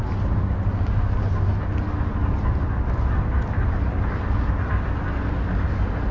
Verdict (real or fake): real